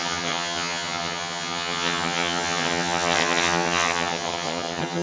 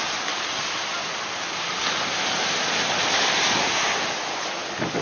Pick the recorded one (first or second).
second